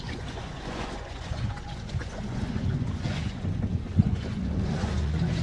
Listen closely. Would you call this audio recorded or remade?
remade